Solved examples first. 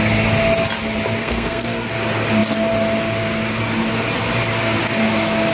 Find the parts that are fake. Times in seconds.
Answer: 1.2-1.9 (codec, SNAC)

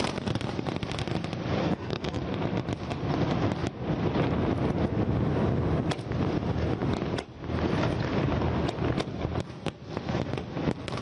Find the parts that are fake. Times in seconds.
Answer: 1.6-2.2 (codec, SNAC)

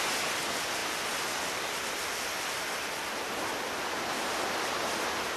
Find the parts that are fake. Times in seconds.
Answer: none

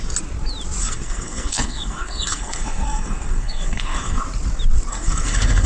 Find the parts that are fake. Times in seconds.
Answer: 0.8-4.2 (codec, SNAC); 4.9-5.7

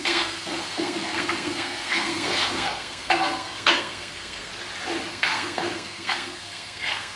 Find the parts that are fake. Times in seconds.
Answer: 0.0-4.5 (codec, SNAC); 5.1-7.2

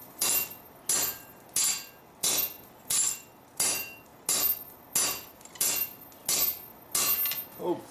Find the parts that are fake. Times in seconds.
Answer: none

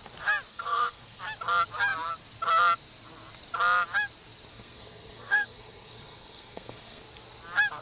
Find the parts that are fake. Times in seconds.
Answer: 0.5-1.2 (codec, SNAC); 4.5-7.0

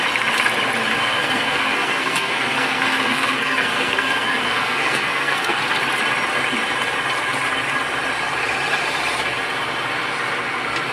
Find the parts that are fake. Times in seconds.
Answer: 1.0-5.6 (codec, SNAC)